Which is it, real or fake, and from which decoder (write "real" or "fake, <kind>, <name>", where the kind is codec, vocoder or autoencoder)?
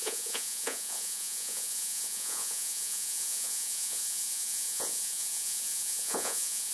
fake, vocoder, Vocos